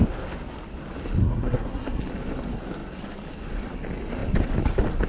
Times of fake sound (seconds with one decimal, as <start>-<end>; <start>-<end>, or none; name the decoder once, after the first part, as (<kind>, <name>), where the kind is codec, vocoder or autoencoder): 1.2-2.0 (codec, SNAC)